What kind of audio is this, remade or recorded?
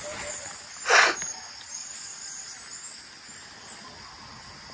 recorded